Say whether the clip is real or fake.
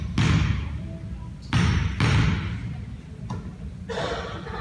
real